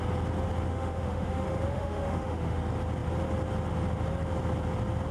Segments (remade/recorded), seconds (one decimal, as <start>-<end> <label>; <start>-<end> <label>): 0.0-0.7 recorded; 0.7-2.6 remade; 2.6-5.1 recorded